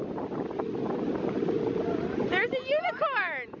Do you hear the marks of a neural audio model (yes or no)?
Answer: no